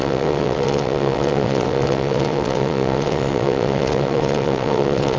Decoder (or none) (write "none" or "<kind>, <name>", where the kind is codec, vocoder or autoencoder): vocoder, WaveNeXt